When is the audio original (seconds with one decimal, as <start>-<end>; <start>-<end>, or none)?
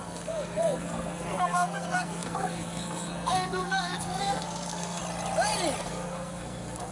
5.0-5.8